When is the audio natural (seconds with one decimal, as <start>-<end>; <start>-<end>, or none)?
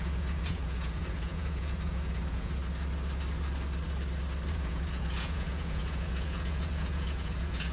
2.6-4.5